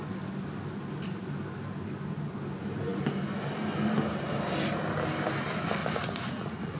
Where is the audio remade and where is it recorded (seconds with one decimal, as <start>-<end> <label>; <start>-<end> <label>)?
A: 0.0-5.8 recorded; 5.8-6.8 remade